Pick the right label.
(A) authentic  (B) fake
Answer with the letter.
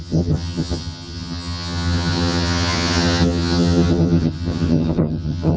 B